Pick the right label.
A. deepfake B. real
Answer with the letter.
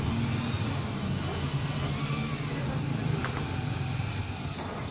B